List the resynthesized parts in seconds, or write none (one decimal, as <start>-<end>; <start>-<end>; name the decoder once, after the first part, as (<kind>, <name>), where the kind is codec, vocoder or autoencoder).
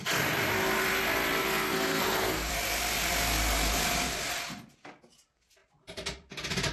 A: 1.4-2.5 (codec, SNAC)